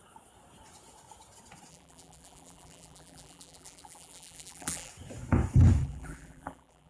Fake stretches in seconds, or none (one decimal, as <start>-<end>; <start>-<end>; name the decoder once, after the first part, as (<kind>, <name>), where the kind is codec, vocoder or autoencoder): 1.7-4.9 (vocoder, BigVGAN v2); 5.8-6.9